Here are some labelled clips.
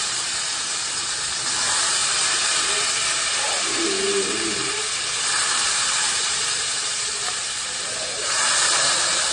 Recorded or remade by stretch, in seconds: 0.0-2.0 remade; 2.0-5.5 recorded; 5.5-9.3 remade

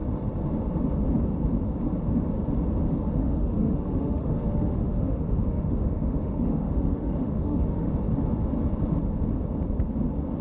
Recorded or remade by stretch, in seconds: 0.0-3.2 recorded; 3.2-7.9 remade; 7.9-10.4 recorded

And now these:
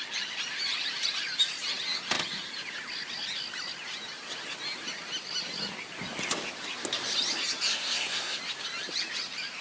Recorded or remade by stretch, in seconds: 0.0-7.7 recorded; 7.7-8.4 remade; 8.4-9.6 recorded